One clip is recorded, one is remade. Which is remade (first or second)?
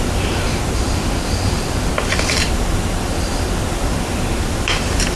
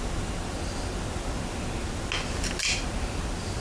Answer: first